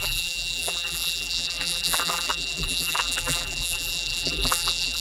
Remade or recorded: remade